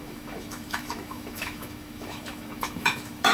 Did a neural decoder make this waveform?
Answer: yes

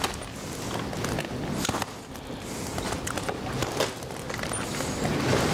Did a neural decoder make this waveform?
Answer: no